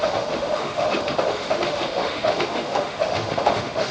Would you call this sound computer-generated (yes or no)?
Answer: yes